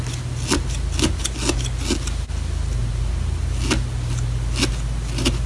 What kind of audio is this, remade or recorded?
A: recorded